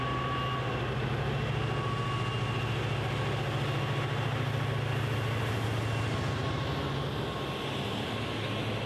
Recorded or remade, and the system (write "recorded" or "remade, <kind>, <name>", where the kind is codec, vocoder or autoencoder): recorded